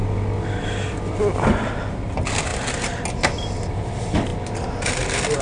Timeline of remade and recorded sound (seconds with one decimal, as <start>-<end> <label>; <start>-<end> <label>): 0.0-5.4 recorded